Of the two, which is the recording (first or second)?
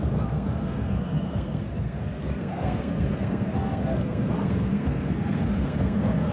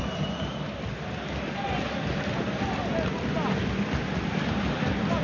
second